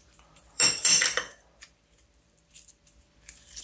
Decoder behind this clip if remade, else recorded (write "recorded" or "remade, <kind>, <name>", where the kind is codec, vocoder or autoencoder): remade, vocoder, BigVGAN v2